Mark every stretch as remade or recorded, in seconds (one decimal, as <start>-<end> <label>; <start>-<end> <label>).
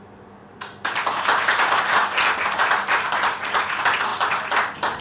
0.0-0.4 recorded; 0.4-1.4 remade; 1.4-5.0 recorded